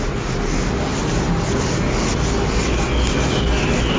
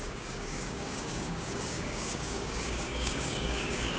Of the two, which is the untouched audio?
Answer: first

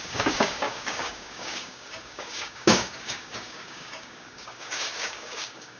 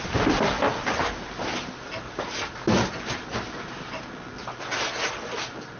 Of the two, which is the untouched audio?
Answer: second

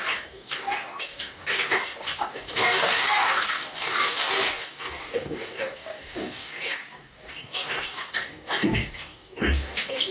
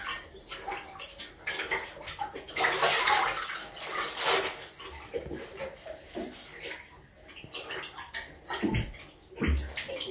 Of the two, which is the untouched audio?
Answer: second